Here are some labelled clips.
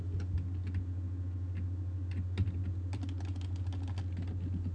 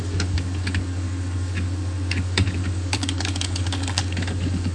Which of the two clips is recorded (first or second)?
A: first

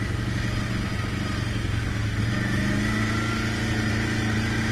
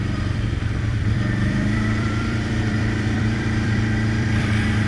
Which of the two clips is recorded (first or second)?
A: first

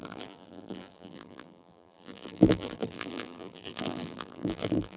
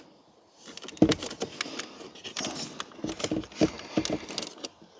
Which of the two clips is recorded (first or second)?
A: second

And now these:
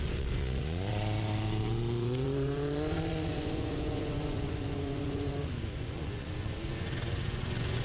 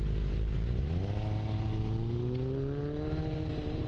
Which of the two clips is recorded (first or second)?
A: second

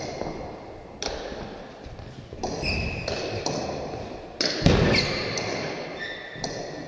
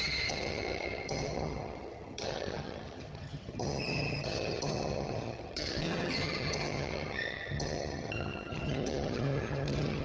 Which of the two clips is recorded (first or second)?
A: first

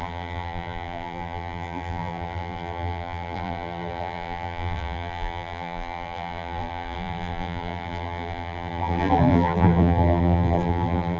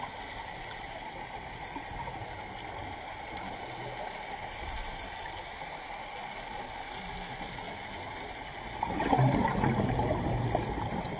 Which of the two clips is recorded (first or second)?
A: second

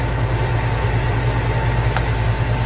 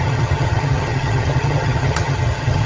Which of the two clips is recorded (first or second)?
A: first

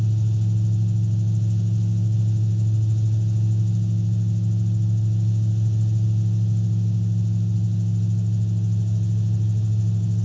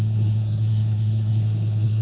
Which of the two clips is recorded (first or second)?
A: first